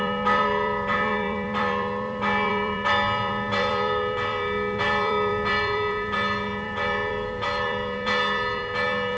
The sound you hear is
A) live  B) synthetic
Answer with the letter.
B